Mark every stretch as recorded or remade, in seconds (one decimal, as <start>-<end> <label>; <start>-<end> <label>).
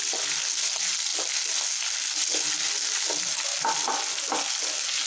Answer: 0.0-5.1 recorded